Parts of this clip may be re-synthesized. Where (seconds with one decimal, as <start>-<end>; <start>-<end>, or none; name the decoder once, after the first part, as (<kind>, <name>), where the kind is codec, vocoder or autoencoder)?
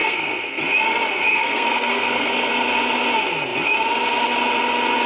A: 0.0-0.6 (codec, SNAC); 1.3-2.5